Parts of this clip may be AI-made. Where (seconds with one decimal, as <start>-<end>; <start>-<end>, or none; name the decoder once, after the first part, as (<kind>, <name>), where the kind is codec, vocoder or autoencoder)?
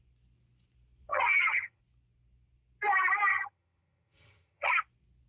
1.1-1.8 (vocoder, HiFi-GAN); 3.3-4.7